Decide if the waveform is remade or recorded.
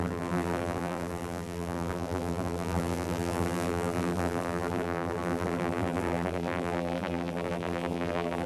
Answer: remade